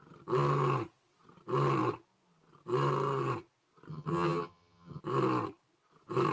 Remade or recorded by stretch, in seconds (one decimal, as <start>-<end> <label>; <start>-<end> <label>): 0.0-3.9 recorded; 3.9-5.0 remade; 5.0-6.3 recorded